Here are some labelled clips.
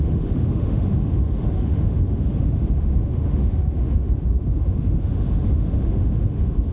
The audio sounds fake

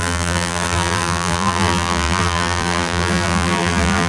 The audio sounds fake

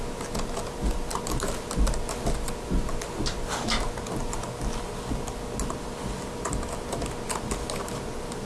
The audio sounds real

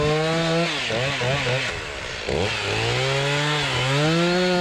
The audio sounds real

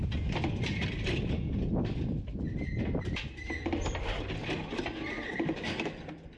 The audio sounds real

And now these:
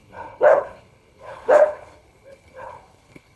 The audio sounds fake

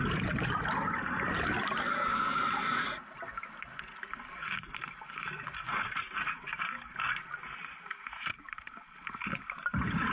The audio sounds real